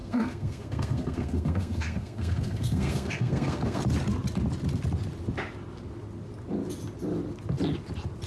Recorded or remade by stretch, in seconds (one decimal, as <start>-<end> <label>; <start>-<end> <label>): 0.0-3.8 remade; 3.8-8.3 recorded